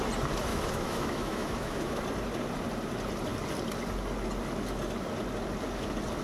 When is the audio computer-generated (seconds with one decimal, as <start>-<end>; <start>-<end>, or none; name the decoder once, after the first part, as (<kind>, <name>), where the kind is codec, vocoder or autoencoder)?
0.5-2.0 (autoencoder, DAC-VAE)